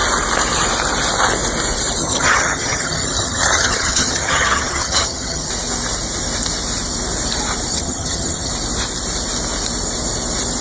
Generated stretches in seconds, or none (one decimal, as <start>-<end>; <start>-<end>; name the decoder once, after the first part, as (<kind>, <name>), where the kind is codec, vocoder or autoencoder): 2.0-5.5 (vocoder, HiFi-GAN); 7.7-8.5